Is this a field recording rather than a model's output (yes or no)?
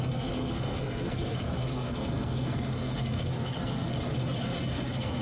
no